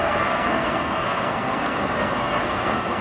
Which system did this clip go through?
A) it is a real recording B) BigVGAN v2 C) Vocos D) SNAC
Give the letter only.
D